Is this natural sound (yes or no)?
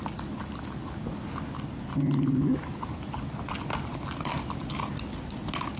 yes